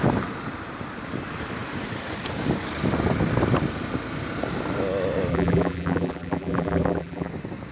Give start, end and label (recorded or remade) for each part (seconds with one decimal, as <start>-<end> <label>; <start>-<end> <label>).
0.0-5.3 recorded; 5.3-7.3 remade; 7.3-7.7 recorded